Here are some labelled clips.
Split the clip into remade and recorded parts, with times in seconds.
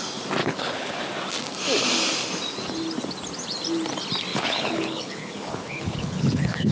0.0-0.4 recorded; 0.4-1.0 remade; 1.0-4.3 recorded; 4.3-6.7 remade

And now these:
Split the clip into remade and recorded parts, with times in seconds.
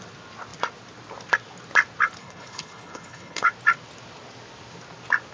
0.0-2.2 recorded; 2.2-3.5 remade; 3.5-5.3 recorded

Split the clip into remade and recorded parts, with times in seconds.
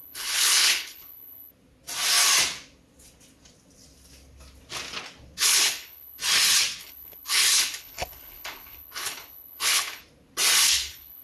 0.0-1.5 remade; 1.5-5.4 recorded; 5.4-6.2 remade; 6.2-6.8 recorded; 6.8-10.0 remade; 10.0-10.7 recorded; 10.7-11.2 remade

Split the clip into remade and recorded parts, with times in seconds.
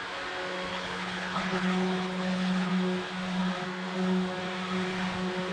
0.0-0.7 recorded; 0.7-2.7 remade; 2.7-5.5 recorded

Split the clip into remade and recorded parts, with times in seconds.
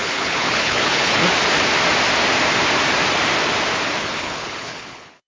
0.0-1.2 remade; 1.2-4.0 recorded; 4.0-5.3 remade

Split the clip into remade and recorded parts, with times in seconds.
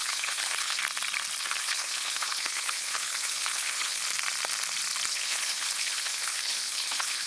0.0-0.8 remade; 0.8-1.4 recorded; 1.4-4.0 remade; 4.0-5.1 recorded; 5.1-7.3 remade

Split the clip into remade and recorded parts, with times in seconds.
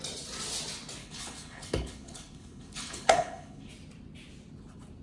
0.0-1.0 recorded; 1.0-3.7 remade; 3.7-5.0 recorded